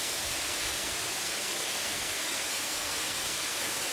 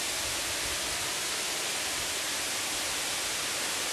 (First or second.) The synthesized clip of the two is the first